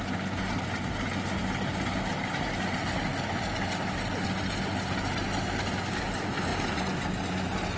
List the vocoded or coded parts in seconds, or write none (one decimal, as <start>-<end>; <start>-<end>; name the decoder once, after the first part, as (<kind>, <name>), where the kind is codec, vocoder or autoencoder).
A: none